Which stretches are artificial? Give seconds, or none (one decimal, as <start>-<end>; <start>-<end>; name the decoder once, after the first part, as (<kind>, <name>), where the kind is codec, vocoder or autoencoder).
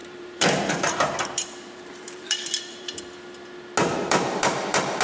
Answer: 0.0-3.0 (vocoder, BigVGAN v2); 3.8-5.0